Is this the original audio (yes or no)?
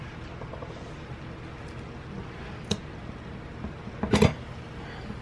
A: yes